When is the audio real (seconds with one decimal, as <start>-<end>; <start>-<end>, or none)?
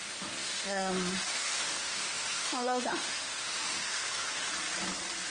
0.9-1.3; 4.5-5.3